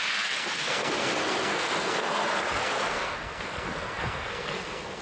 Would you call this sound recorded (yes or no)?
no